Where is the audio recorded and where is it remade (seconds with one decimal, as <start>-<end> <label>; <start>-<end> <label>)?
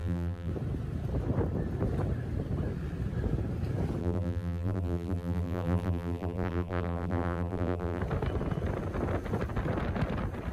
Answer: 0.0-0.5 remade; 0.5-4.0 recorded; 4.0-8.0 remade; 8.0-10.5 recorded